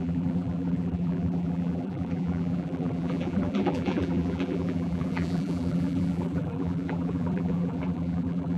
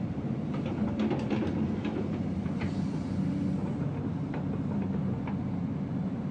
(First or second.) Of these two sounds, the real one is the second